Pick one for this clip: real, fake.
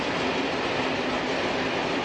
real